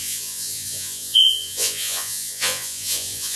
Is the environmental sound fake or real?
fake